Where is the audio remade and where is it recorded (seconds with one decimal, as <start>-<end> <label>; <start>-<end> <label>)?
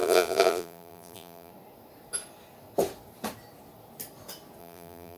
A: 0.0-1.5 remade; 1.5-4.6 recorded; 4.6-5.2 remade